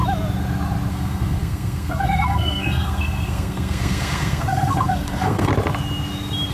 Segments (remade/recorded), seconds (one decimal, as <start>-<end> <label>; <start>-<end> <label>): 0.0-0.9 recorded; 0.9-5.5 remade; 5.5-6.5 recorded